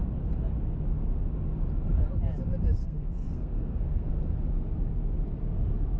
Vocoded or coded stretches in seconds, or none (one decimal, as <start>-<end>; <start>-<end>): 2.8-4.1